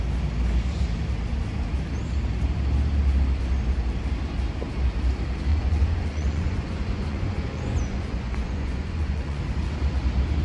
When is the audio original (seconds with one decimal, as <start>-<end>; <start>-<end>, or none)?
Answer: 0.0-5.5; 9.4-10.4